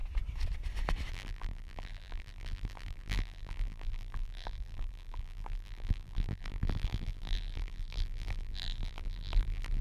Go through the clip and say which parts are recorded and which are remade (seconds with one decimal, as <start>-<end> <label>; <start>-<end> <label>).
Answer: 0.0-1.1 recorded; 1.1-9.8 remade